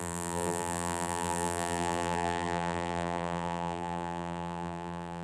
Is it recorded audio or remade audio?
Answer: remade